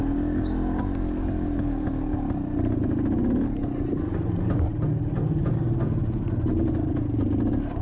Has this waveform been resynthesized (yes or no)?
no